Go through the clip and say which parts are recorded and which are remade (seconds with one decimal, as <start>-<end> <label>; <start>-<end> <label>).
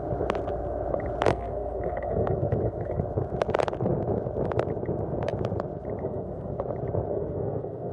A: 0.0-1.3 recorded; 1.3-3.0 remade; 3.0-6.0 recorded; 6.0-6.6 remade; 6.6-7.1 recorded; 7.1-7.9 remade